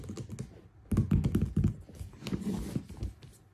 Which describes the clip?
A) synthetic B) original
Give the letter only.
B